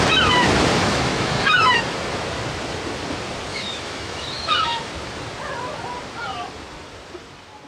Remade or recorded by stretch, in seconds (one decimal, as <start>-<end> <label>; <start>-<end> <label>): 0.0-0.8 recorded; 0.8-1.8 remade; 1.8-3.5 recorded; 3.5-4.9 remade; 4.9-7.7 recorded